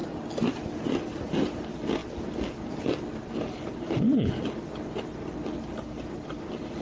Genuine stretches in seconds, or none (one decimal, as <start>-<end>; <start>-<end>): 0.0-6.8